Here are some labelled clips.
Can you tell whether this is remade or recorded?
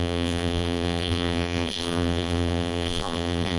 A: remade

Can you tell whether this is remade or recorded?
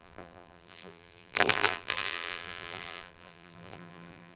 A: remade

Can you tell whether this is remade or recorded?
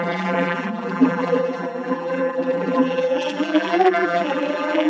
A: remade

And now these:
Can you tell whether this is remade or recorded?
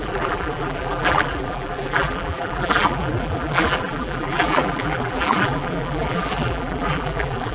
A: remade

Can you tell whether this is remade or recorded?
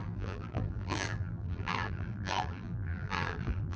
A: remade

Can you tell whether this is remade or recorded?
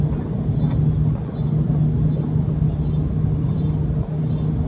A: recorded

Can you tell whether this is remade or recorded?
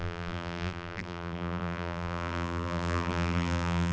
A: remade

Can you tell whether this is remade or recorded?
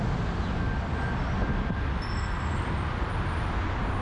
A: recorded